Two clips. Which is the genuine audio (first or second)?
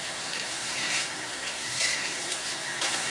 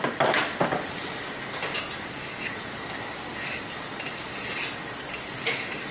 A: second